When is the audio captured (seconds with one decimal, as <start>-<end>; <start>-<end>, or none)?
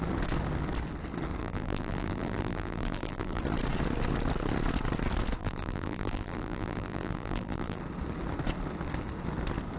0.0-1.4; 3.4-5.4; 7.8-9.8